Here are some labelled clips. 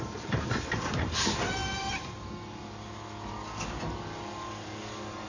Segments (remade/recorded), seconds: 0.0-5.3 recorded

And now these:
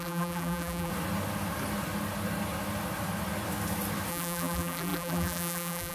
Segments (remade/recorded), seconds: 0.0-0.9 remade; 0.9-4.1 recorded; 4.1-5.9 remade

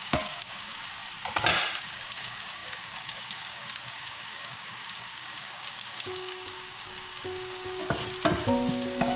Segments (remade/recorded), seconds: 0.0-1.0 remade; 1.0-1.8 recorded; 1.8-7.8 remade; 7.8-8.7 recorded; 8.7-9.2 remade

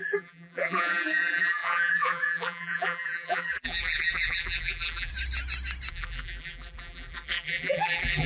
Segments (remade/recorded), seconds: 0.0-5.1 remade; 5.1-5.9 recorded; 5.9-8.3 remade

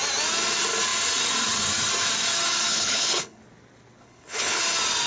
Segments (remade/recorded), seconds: 0.0-2.7 recorded; 2.7-3.4 remade; 3.4-4.0 recorded; 4.0-4.6 remade; 4.6-5.1 recorded

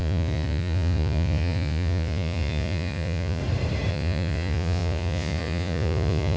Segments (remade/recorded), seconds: 0.0-3.4 remade; 3.4-3.9 recorded; 3.9-6.4 remade

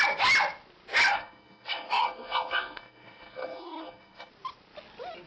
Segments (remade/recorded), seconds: 0.0-1.1 recorded; 1.1-4.3 remade; 4.3-5.3 recorded